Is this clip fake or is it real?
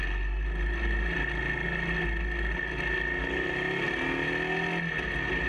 real